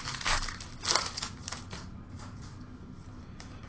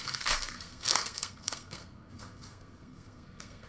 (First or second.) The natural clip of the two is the first